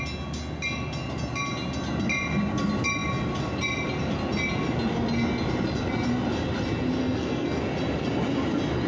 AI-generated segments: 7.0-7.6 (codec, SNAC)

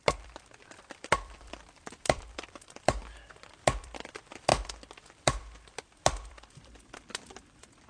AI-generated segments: 0.0-3.0 (vocoder, BigVGAN v2); 3.8-4.5; 5.1-7.9

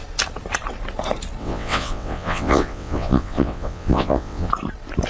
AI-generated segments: 1.4-4.5 (vocoder, WaveNeXt)

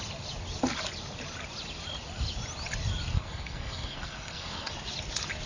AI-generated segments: 3.1-4.7 (codec, SNAC)

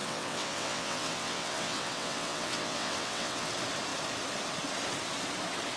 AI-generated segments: 0.0-3.5 (vocoder, WaveNeXt)

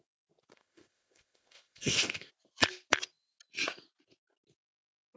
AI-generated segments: 0.5-2.3 (codec, ZipCodec)

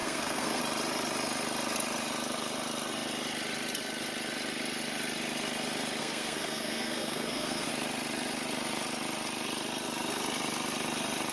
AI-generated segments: 0.0-0.6 (codec, SNAC); 6.0-7.7